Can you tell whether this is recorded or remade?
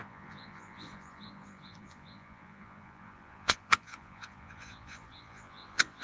remade